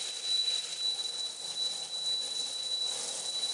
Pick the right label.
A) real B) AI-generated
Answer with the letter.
A